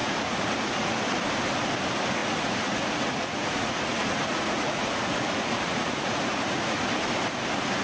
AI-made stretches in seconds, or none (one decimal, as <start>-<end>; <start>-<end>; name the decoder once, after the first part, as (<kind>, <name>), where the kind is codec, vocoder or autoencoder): 0.0-1.0 (vocoder, Vocos); 2.2-6.9